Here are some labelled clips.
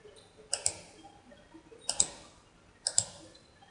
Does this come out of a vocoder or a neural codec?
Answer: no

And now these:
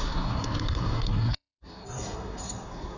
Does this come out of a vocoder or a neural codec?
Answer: yes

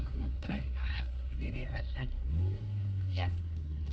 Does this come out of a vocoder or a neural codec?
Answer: yes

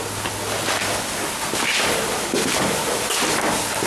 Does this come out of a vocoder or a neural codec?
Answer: no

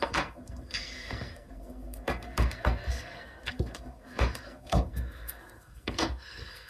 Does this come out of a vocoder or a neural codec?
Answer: yes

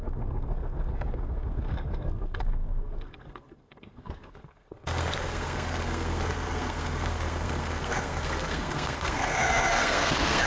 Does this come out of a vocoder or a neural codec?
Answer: yes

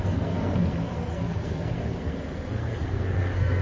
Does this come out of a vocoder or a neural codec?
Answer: yes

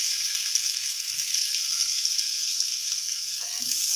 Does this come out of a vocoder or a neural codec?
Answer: yes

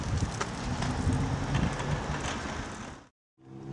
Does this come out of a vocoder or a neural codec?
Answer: no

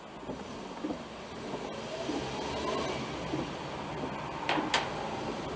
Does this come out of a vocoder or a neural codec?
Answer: no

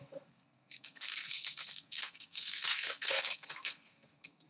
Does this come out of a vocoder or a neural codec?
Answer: yes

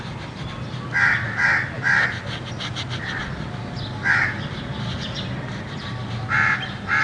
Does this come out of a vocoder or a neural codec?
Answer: no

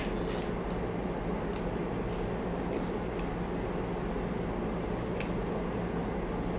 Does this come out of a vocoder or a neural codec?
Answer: no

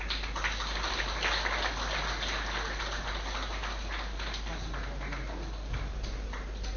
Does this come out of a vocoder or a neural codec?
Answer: no